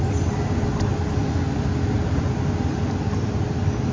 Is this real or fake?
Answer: real